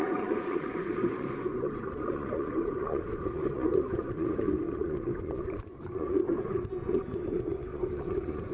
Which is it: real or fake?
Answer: fake